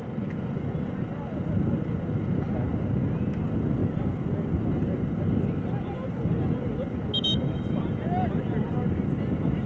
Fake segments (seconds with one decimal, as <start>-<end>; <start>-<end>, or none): 3.8-4.6